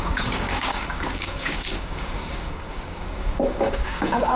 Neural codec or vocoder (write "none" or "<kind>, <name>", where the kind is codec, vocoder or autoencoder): codec, DAC